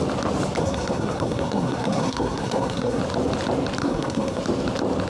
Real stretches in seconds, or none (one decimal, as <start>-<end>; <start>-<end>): 0.0-0.6; 3.0-3.8; 4.4-5.1